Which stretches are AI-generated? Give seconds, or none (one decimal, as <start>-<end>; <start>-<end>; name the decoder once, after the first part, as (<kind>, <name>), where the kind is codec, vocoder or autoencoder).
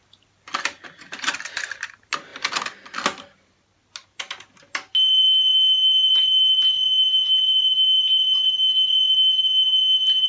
none